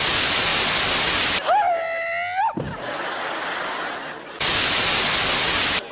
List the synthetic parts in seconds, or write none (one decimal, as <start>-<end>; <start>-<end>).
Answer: none